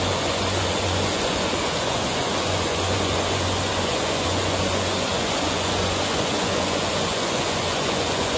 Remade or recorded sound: remade